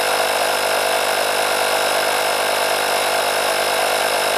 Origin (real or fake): real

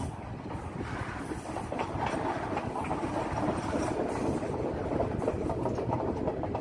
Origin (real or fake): real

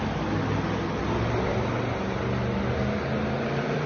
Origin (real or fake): real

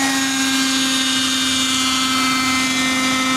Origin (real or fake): real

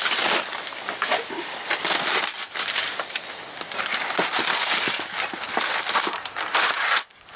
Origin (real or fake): real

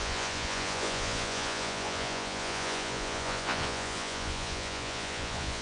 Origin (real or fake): fake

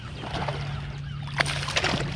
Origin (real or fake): real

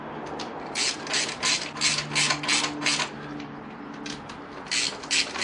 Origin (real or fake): real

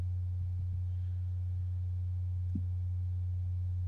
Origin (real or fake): real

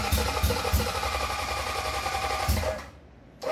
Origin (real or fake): fake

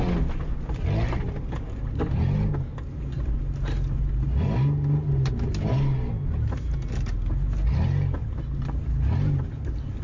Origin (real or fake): real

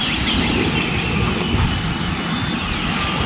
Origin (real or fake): real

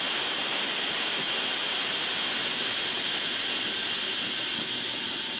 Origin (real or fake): real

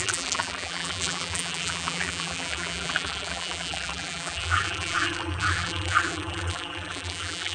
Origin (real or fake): fake